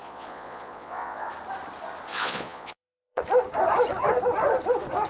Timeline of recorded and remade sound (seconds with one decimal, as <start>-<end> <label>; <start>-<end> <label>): 0.0-1.3 remade; 1.3-2.1 recorded; 2.1-3.2 remade; 3.2-5.1 recorded